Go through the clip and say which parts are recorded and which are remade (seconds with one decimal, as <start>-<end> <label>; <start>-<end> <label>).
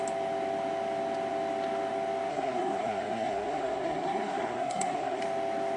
0.0-2.3 recorded; 2.3-5.2 remade; 5.2-5.8 recorded